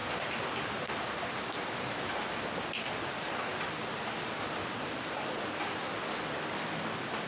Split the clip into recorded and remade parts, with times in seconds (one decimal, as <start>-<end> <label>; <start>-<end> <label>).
0.0-3.5 recorded; 3.5-5.8 remade; 5.8-7.3 recorded